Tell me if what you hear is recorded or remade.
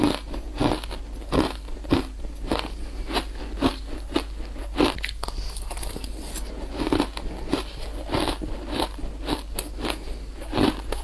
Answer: recorded